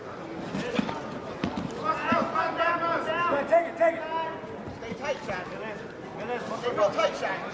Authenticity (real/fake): real